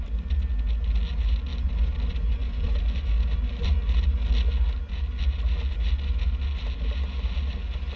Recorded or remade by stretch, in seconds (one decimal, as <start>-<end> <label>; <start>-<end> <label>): 0.0-8.0 recorded